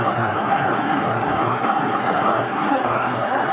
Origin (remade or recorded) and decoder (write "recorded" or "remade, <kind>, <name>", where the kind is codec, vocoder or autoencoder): remade, codec, SNAC